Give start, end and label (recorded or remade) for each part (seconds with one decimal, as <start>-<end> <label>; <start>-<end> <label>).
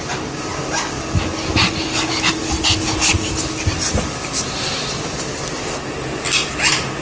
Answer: 0.0-7.0 recorded